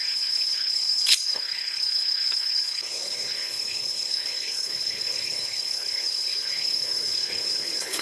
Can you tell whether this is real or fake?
fake